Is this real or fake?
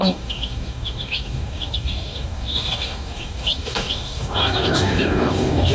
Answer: fake